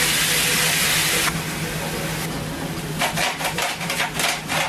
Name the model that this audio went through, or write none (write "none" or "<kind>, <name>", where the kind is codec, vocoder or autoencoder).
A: none